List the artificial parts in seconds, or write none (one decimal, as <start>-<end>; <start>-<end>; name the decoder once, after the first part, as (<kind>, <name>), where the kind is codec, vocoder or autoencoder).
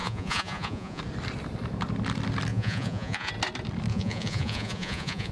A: 0.0-1.0 (vocoder, Vocos); 2.5-3.3; 3.9-5.3